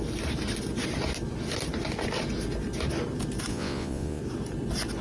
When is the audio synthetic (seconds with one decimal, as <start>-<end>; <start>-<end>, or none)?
3.5-4.2